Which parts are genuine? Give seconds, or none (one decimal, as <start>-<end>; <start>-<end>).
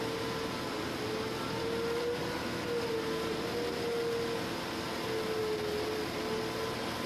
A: 0.0-7.1